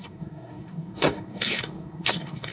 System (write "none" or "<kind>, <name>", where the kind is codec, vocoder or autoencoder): codec, SNAC